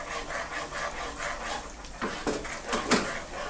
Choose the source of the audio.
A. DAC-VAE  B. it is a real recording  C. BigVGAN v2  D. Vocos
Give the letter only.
B